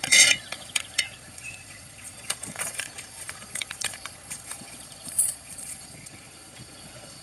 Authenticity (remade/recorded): remade